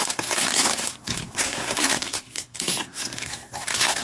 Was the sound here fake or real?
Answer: fake